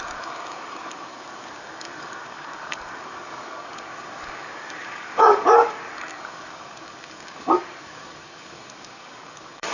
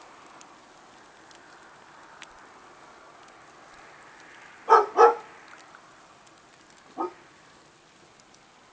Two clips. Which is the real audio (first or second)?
second